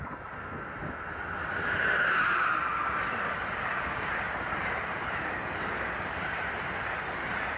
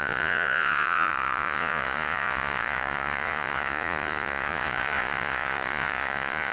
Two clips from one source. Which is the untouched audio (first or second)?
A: first